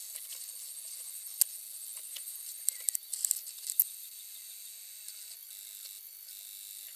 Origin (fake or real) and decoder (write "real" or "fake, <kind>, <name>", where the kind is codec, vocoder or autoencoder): real